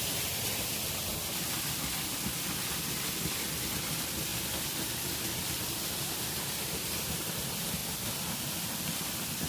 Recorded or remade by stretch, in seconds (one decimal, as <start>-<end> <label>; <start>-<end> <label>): 0.0-0.7 remade; 0.7-3.7 recorded; 3.7-4.3 remade; 4.3-5.9 recorded; 5.9-7.8 remade; 7.8-9.5 recorded